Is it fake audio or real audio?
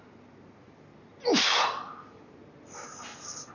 real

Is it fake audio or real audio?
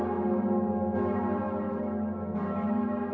fake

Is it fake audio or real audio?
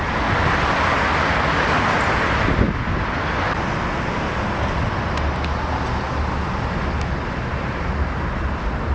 real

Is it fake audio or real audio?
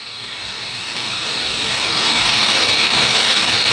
fake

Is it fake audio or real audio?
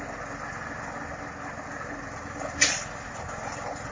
real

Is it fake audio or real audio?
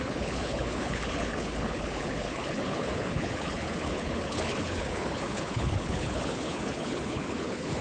fake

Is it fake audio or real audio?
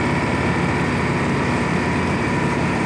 real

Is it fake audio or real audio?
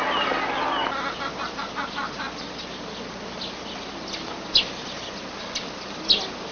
real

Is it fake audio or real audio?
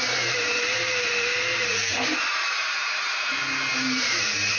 fake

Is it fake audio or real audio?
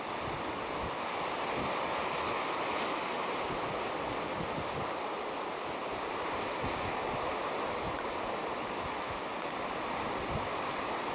real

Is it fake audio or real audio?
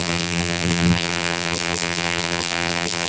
fake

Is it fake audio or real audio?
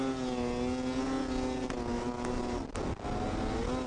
real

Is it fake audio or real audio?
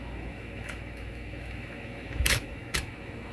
fake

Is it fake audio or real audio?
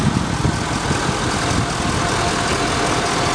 real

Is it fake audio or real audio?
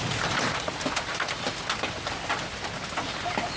real